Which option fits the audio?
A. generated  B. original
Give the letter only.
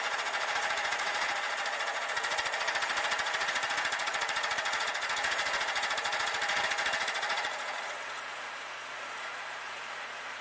A